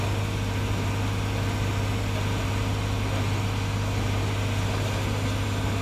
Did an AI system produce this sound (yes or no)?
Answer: no